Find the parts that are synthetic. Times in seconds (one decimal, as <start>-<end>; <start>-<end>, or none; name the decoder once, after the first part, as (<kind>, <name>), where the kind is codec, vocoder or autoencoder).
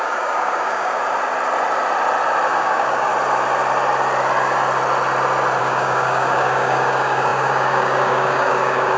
0.0-1.0 (codec, DAC); 2.5-3.1; 5.6-9.0